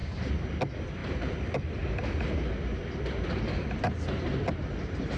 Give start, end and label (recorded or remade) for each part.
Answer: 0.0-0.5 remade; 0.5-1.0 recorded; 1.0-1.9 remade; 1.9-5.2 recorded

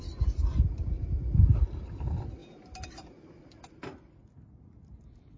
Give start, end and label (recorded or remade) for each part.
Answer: 0.0-5.4 recorded

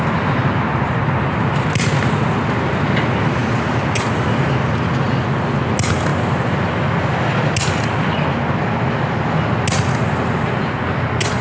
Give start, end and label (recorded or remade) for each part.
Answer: 0.0-11.4 recorded

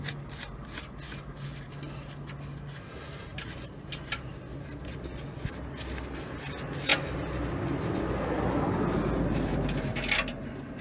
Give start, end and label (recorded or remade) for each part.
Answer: 0.0-10.8 recorded

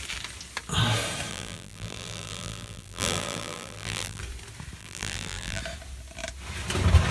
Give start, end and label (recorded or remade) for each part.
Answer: 0.0-1.3 recorded; 1.3-4.2 remade; 4.2-4.8 recorded; 4.8-5.6 remade; 5.6-7.1 recorded

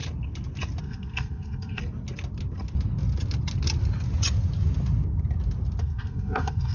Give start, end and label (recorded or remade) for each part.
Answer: 0.0-0.8 recorded; 0.8-1.8 remade; 1.8-5.8 recorded; 5.8-6.7 remade